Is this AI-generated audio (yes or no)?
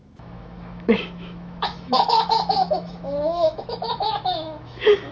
yes